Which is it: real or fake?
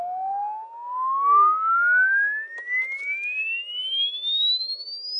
real